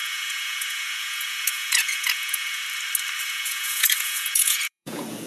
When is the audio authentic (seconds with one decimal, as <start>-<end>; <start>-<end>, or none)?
2.6-3.3

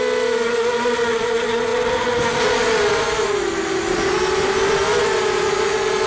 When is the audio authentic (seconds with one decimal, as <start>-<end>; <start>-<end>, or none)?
0.0-6.1

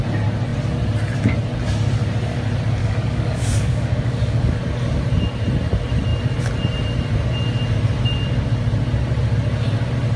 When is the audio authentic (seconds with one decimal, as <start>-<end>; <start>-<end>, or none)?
0.0-2.8; 4.6-10.2

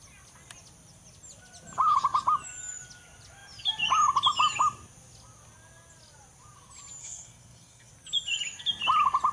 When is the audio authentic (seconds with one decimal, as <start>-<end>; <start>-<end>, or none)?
0.0-7.0; 7.9-9.3

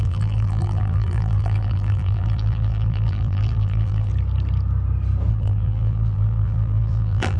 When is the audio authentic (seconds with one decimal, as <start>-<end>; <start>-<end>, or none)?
4.1-5.3

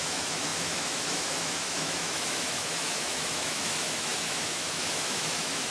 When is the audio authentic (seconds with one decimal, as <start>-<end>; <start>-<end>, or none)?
none

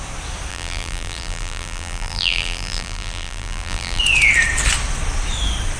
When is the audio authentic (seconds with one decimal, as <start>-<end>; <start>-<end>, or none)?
0.0-0.5; 4.0-5.8

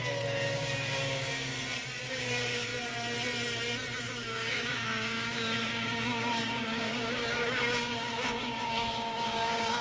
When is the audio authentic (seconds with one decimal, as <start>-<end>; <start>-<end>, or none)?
1.5-2.1; 2.7-4.0